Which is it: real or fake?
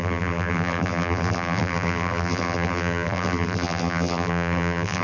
fake